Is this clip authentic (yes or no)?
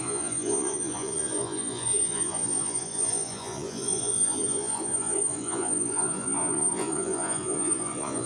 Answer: no